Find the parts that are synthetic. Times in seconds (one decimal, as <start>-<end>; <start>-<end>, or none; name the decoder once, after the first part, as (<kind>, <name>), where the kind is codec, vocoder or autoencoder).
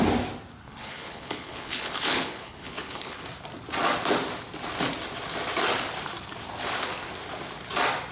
0.6-3.2 (codec, HILCodec)